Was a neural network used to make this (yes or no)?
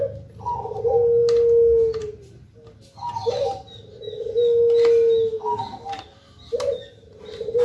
no